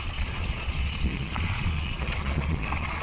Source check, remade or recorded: remade